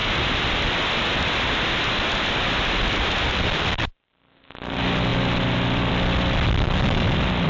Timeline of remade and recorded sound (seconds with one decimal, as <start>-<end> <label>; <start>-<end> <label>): 0.0-4.1 remade; 4.1-7.5 recorded